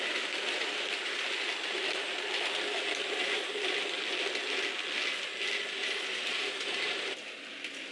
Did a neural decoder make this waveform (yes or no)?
no